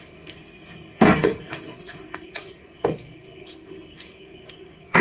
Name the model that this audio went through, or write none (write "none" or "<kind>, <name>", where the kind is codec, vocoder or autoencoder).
codec, SNAC